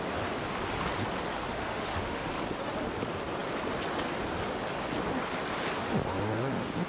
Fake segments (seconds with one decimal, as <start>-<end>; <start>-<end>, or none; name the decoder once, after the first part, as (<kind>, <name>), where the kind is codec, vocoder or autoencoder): 1.6-2.3 (autoencoder, DAC-VAE)